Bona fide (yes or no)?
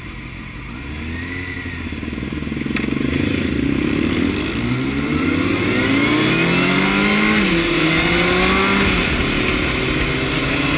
yes